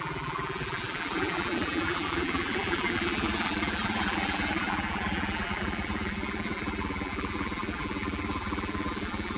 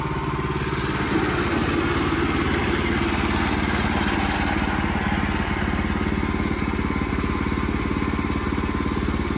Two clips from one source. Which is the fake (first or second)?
first